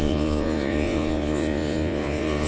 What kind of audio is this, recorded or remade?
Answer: remade